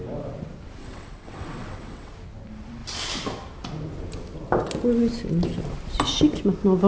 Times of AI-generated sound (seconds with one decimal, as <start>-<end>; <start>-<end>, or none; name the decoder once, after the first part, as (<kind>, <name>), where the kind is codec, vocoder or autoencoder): 0.8-2.1 (vocoder, WaveNeXt)